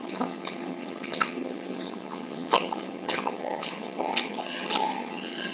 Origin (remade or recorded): remade